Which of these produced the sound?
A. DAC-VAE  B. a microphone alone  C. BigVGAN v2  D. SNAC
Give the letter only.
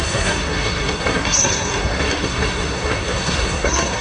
D